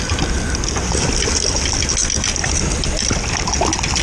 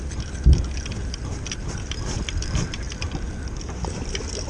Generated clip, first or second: second